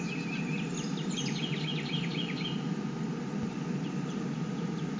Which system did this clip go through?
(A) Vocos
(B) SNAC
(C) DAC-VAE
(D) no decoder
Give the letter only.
D